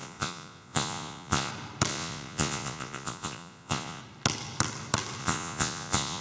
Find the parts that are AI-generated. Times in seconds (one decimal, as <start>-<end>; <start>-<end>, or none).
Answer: 0.0-1.5; 1.9-4.0; 5.2-6.2